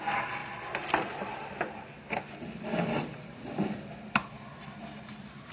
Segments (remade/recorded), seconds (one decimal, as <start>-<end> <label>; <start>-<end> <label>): 0.0-5.5 recorded